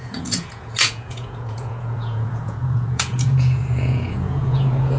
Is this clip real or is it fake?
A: fake